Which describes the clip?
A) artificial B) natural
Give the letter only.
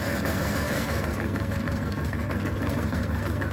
A